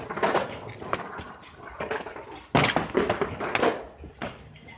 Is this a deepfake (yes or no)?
no